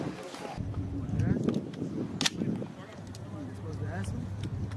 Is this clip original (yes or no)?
yes